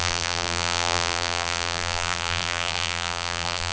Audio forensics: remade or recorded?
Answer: remade